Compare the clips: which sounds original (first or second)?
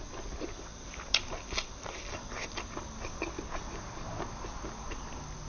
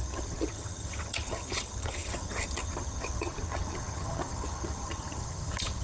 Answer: first